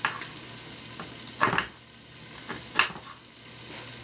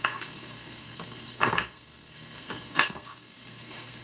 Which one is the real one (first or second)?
first